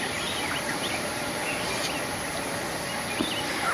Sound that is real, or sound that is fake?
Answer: real